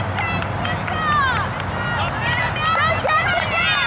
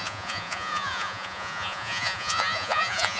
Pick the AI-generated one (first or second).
second